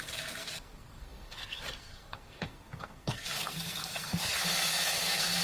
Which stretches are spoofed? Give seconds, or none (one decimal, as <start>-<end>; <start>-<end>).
0.0-5.4